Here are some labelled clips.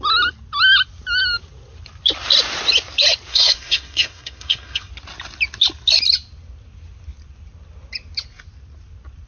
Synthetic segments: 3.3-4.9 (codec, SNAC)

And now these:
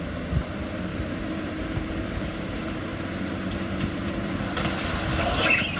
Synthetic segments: 0.9-4.4 (vocoder, BigVGAN v2)